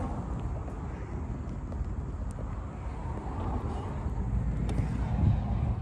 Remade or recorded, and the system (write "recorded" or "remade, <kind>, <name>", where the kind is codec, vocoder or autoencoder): recorded